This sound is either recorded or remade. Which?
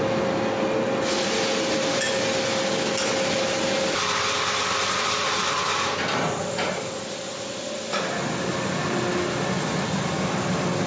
recorded